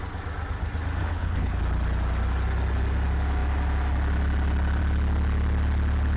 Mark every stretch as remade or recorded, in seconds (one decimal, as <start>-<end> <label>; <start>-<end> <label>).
0.0-1.0 recorded; 1.0-1.6 remade; 1.6-6.2 recorded